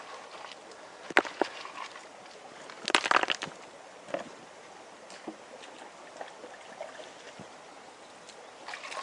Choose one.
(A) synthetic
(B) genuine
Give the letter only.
B